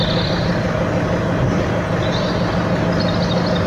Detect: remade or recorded recorded